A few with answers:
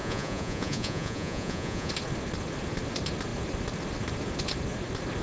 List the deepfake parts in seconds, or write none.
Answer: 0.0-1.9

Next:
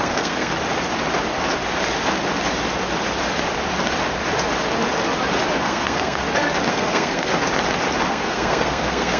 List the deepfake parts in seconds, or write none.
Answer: 0.0-0.5; 5.6-6.2; 6.7-7.3; 8.1-9.2

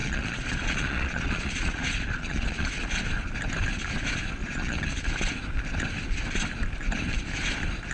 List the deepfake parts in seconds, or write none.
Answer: 0.0-2.9; 4.4-5.1

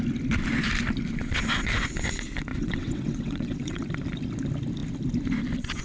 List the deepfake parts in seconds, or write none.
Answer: 2.5-3.8

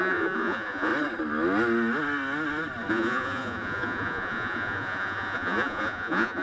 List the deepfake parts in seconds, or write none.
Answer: 0.0-0.9; 2.9-6.4

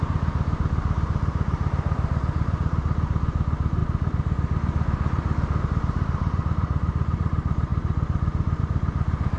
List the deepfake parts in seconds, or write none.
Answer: 0.0-9.4

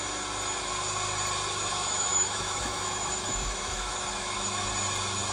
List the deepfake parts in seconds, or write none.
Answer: 1.7-4.7

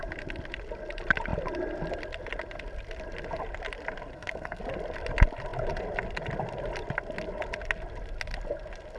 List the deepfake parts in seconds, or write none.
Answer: 4.1-4.6